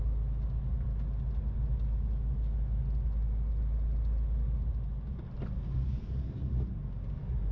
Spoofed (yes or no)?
no